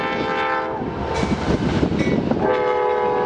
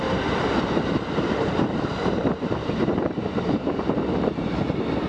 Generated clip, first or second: second